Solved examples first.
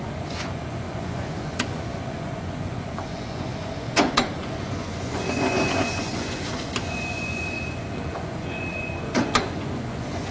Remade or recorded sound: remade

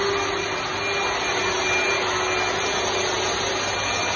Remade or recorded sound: recorded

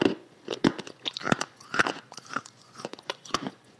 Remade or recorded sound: remade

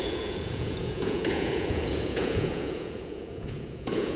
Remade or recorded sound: remade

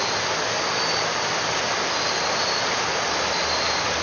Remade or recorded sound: recorded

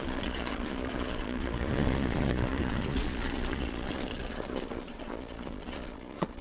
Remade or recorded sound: remade